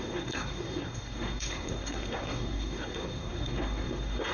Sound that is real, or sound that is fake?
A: fake